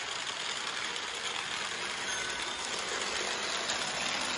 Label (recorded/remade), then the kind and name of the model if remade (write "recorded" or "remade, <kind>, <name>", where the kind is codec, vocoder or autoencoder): recorded